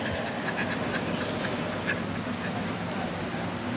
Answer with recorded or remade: recorded